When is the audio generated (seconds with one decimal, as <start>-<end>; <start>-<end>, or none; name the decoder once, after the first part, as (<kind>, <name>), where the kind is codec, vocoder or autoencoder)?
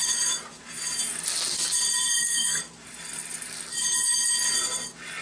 2.1-2.6 (codec, SNAC)